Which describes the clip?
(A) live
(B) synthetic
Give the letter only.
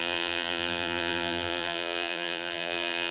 B